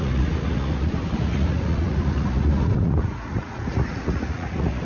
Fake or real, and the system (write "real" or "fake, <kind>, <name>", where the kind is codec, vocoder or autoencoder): fake, vocoder, Vocos